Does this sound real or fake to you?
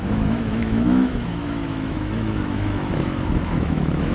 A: fake